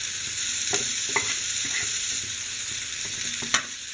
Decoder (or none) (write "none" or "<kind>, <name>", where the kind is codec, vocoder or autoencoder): none